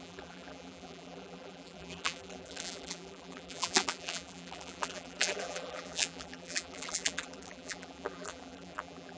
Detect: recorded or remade remade